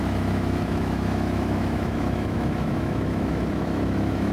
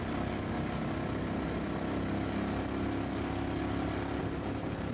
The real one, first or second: second